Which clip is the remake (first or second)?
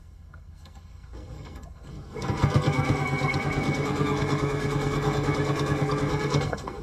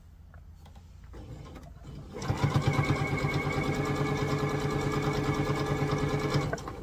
first